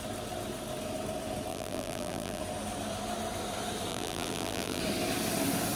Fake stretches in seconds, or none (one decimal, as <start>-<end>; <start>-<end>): 1.5-2.4; 3.9-4.8